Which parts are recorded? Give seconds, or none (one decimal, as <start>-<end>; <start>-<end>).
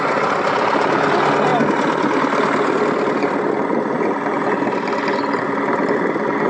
0.0-6.5